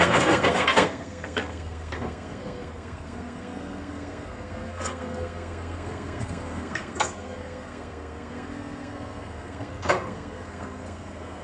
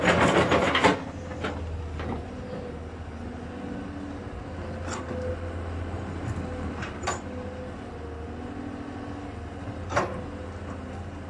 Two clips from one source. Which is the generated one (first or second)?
first